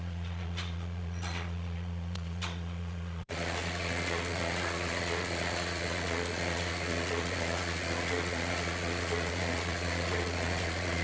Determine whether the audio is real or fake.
fake